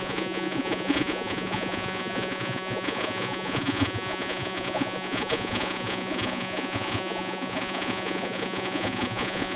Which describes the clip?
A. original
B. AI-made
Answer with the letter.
B